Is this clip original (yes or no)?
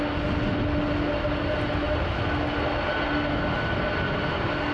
yes